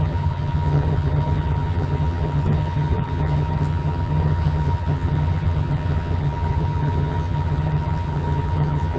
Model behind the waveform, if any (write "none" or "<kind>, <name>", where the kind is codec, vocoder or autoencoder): vocoder, HiFi-GAN